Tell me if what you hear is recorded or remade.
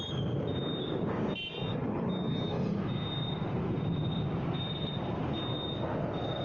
recorded